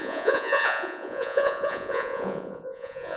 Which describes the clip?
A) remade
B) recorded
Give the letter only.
A